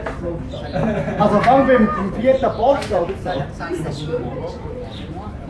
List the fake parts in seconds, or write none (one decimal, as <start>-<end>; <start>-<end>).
1.9-5.5

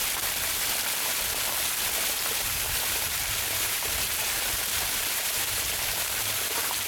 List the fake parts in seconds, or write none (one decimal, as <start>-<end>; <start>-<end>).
2.1-6.9

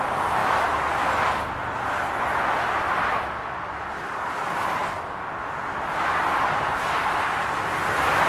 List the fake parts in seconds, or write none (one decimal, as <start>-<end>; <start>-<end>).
none

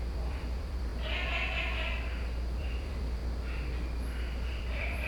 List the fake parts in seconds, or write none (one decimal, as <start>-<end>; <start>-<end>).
0.0-0.9; 2.6-3.2; 4.5-5.1

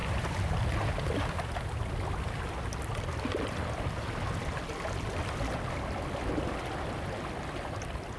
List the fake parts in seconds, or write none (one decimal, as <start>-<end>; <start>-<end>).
0.0-0.5

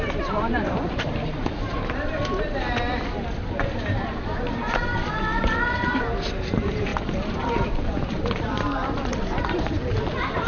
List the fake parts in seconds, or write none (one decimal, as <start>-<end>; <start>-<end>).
0.0-2.2; 3.9-10.5